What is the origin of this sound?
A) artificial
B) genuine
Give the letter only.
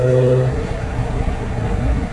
A